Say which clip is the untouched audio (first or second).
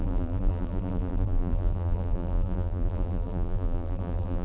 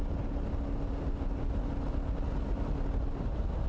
second